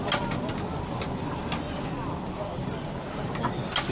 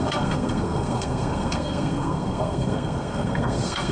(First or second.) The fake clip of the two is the second